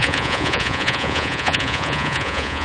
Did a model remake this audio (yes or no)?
yes